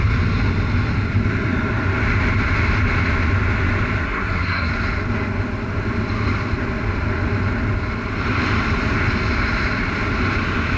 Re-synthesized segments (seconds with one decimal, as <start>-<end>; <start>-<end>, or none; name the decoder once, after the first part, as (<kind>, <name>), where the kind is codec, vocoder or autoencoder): 4.0-4.7 (codec, SNAC)